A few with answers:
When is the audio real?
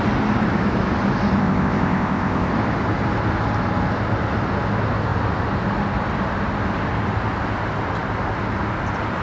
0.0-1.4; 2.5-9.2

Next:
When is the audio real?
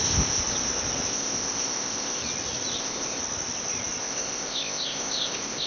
0.4-1.1; 2.2-2.8; 3.2-4.0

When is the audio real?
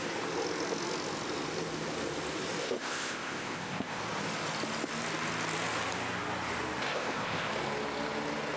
0.0-2.6; 4.0-6.9; 7.5-8.6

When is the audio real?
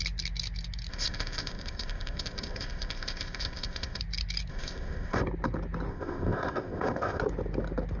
0.0-0.9; 4.0-4.5; 5.2-5.9; 7.2-8.0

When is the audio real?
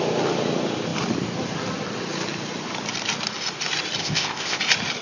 0.0-4.0; 4.6-5.0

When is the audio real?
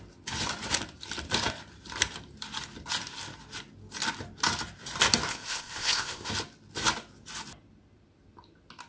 0.0-5.3; 6.3-8.9